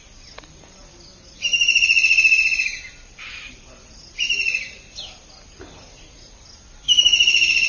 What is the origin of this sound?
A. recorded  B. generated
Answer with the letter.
A